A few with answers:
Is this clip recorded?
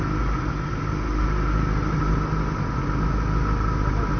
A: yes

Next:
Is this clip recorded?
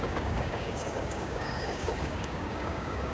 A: no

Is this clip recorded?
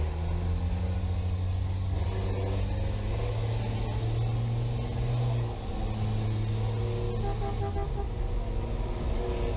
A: yes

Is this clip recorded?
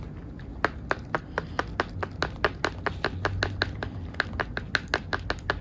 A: yes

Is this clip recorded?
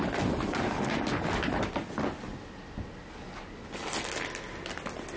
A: yes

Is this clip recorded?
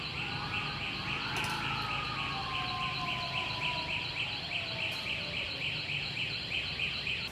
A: yes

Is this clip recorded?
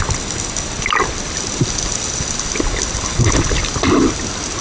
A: yes